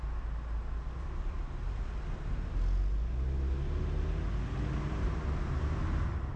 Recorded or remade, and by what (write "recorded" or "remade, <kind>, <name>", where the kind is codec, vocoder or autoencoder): recorded